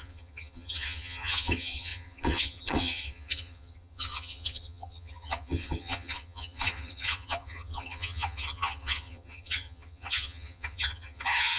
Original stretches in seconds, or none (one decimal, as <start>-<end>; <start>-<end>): none